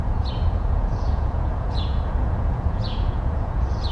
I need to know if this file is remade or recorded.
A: remade